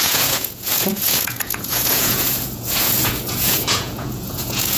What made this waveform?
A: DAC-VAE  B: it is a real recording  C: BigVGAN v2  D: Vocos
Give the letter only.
D